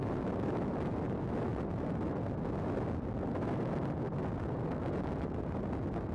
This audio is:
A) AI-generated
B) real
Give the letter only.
B